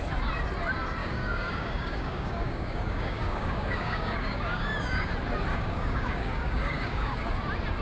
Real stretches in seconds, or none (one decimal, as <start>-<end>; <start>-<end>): 0.0-1.0; 5.1-5.5; 7.3-7.8

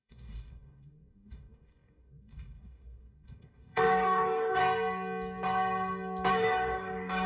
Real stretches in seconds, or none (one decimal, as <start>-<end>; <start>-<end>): 4.6-6.3

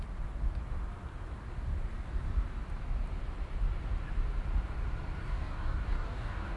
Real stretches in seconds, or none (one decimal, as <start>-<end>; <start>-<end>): 0.0-5.2

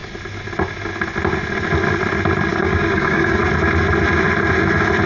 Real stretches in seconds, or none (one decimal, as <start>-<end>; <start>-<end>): 0.0-2.5; 3.4-5.1

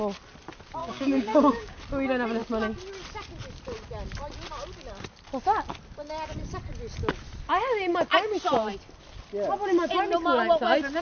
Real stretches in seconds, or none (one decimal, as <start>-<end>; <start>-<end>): 0.0-0.8; 1.8-11.0

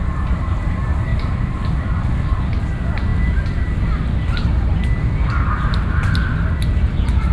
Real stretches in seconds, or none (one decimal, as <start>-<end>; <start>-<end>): 0.0-7.3

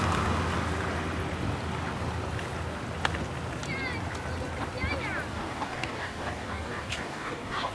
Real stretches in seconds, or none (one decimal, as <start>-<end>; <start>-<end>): 0.0-5.3